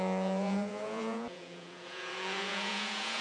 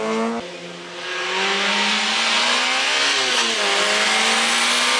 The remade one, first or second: first